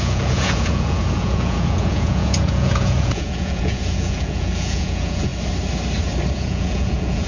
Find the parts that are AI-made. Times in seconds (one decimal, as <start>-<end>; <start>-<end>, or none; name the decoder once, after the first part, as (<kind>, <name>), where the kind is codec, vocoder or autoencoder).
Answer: 0.0-5.3 (vocoder, Vocos); 6.3-7.3